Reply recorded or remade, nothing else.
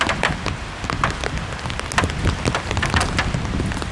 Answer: recorded